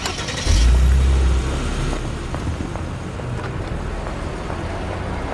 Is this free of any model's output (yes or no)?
yes